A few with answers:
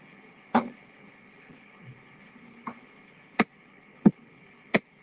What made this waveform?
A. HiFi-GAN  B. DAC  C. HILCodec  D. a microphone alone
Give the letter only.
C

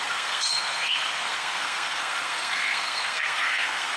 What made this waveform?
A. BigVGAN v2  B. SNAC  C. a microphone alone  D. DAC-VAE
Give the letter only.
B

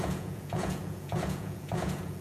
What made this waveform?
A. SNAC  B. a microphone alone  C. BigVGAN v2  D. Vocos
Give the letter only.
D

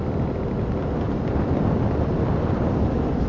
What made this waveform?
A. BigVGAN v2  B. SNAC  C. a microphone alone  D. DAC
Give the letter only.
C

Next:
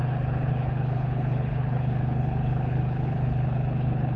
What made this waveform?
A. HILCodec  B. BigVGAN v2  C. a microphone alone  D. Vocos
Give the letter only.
A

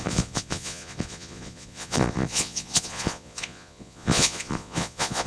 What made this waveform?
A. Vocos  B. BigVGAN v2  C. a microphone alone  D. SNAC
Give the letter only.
A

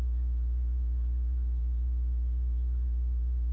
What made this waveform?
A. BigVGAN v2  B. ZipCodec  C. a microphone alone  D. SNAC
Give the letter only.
A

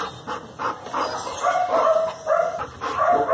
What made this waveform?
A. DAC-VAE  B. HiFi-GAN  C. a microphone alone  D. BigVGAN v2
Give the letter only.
C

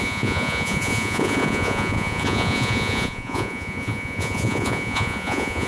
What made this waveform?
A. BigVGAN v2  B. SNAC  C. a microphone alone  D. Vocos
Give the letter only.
D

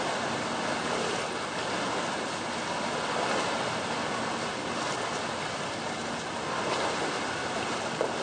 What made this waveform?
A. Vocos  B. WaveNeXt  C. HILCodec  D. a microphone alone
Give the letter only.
D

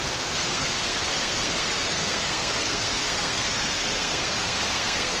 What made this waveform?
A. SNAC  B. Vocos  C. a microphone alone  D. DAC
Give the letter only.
A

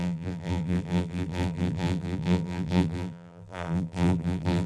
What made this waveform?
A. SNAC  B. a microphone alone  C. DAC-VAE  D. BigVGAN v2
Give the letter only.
D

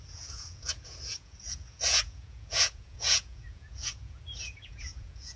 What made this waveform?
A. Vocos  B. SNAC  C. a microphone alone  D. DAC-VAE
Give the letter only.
A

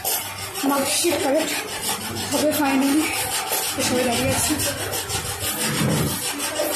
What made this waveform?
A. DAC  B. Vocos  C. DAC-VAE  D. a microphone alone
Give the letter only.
D